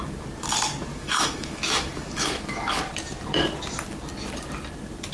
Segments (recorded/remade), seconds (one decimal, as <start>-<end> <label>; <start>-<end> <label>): 0.0-0.9 recorded; 0.9-2.8 remade; 2.8-5.1 recorded